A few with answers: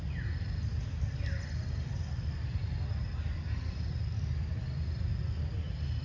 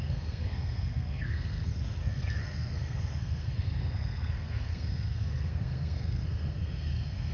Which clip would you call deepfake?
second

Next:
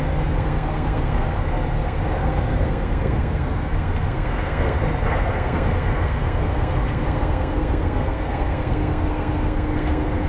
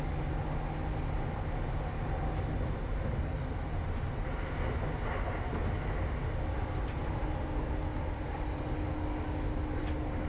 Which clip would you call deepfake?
first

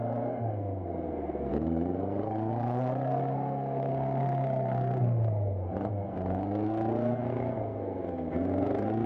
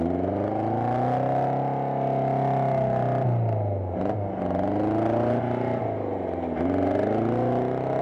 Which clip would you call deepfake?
first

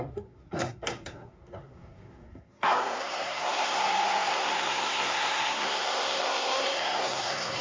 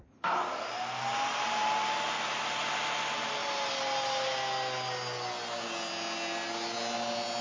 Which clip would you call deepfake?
first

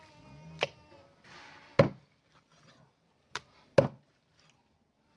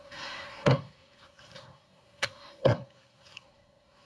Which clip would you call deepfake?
second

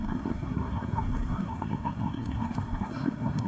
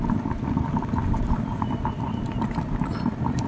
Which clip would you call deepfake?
first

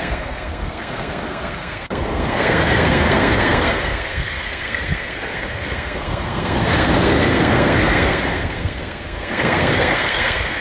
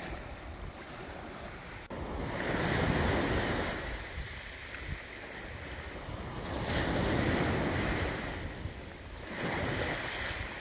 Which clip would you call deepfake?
first